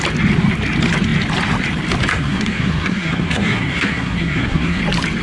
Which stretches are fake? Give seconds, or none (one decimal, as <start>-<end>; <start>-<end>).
2.1-4.8